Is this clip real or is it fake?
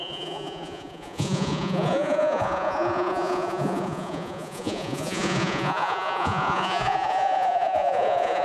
fake